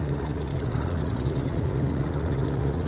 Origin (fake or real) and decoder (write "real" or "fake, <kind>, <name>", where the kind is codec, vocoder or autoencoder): fake, vocoder, Vocos